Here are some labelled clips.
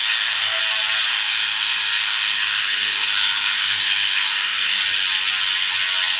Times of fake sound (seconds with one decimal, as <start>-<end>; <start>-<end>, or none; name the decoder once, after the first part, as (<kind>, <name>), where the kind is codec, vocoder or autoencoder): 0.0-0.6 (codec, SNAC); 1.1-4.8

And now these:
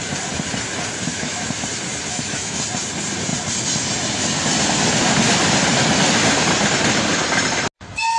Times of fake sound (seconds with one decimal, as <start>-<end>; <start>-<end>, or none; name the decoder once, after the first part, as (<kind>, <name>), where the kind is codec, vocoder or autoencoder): 1.1-1.6 (autoencoder, DAC-VAE); 2.1-2.6

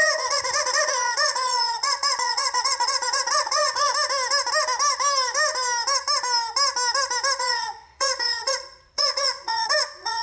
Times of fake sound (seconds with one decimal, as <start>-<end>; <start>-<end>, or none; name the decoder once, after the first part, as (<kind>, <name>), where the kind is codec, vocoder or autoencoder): 0.0-3.9 (vocoder, Vocos); 7.4-10.2

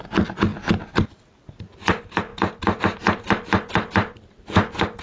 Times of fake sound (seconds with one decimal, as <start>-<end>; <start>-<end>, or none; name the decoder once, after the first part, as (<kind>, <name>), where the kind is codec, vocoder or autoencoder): none

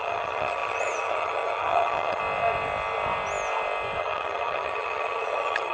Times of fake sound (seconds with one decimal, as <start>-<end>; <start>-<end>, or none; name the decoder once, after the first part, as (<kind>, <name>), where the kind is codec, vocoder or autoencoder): 0.0-2.2 (vocoder, HiFi-GAN); 4.0-5.7

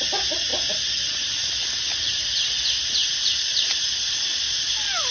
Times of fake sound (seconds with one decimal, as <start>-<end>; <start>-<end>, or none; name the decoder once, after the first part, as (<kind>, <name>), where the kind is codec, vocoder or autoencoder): 3.0-4.6 (vocoder, BigVGAN v2)

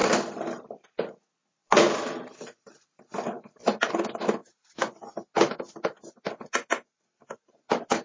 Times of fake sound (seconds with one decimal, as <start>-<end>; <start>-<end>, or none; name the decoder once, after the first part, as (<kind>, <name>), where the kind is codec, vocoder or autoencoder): 0.0-4.4 (vocoder, BigVGAN v2); 7.3-8.0

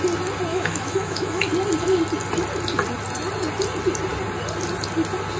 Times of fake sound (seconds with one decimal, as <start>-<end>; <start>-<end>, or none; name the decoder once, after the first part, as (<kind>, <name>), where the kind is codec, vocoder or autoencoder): 0.5-1.5 (autoencoder, DAC-VAE)